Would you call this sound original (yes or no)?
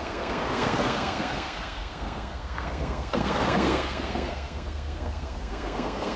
no